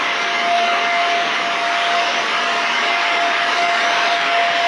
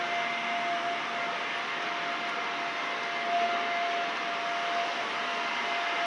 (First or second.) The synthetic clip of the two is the first